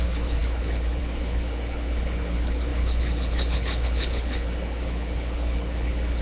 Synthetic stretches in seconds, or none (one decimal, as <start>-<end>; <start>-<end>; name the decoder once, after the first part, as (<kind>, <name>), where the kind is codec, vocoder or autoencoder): 0.0-6.2 (codec, HILCodec)

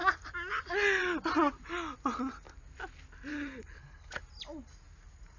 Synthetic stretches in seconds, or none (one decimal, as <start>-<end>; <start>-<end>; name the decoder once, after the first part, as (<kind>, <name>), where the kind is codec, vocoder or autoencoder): 3.3-4.2 (codec, HILCodec)

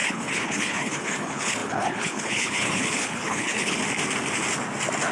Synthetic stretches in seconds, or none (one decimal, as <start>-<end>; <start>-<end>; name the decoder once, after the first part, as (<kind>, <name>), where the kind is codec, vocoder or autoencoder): 0.0-3.8 (codec, HILCodec)

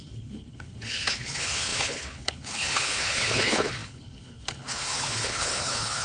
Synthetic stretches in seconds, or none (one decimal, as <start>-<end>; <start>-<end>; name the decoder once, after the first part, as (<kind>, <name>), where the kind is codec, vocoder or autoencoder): 0.0-6.0 (codec, HILCodec)

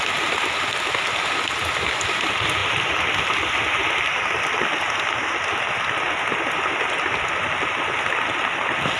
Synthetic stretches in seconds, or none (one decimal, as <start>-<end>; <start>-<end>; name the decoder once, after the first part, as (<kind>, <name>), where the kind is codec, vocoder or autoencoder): none

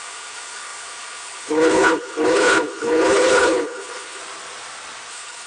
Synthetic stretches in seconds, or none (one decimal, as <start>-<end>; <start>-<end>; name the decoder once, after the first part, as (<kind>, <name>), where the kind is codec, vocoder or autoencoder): 0.0-4.2 (codec, HILCodec); 5.1-5.5